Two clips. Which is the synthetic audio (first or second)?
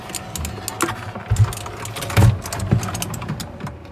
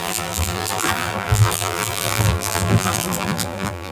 second